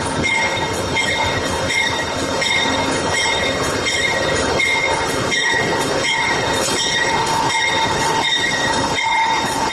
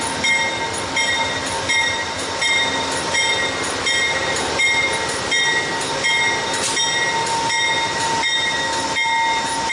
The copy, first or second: first